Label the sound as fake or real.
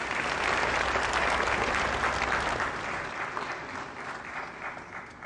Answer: real